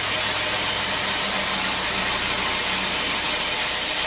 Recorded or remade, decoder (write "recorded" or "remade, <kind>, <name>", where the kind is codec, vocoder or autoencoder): recorded